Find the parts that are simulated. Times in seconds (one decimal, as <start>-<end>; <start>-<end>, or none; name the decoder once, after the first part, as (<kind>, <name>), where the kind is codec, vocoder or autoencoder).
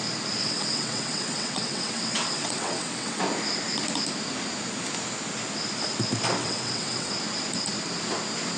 0.4-3.2 (vocoder, WaveNeXt); 6.4-7.1